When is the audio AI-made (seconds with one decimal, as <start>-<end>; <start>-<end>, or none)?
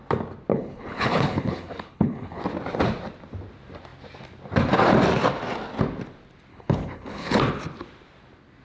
0.5-2.4; 6.5-7.4